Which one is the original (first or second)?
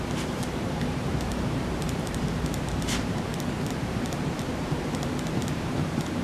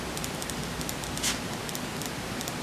second